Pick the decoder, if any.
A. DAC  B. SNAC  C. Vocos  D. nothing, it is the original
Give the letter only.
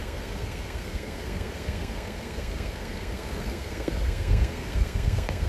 B